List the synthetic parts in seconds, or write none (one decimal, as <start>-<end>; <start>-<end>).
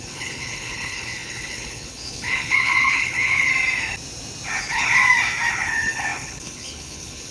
0.0-3.5; 4.6-5.0; 5.5-7.3